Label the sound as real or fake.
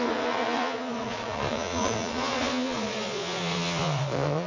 fake